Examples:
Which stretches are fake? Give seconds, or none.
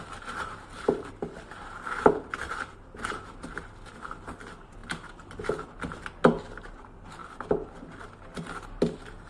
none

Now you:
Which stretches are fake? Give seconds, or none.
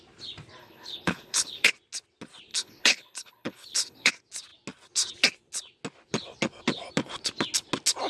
0.6-1.7; 2.5-4.1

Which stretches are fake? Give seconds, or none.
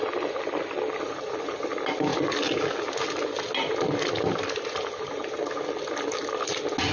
none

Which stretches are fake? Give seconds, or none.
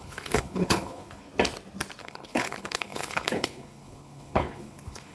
0.0-1.3; 2.0-5.1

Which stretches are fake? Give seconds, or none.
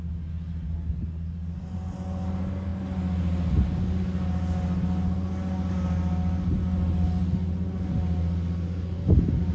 none